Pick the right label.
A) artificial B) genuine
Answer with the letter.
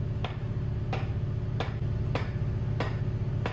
B